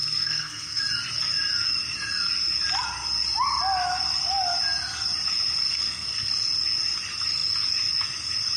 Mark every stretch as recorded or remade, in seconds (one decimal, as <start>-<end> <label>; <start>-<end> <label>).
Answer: 0.0-0.8 remade; 0.8-5.6 recorded; 5.6-6.3 remade; 6.3-8.6 recorded